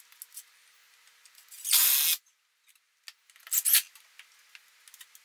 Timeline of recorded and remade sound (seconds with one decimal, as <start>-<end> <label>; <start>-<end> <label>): 0.0-5.2 recorded